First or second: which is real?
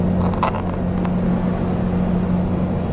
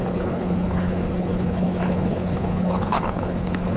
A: first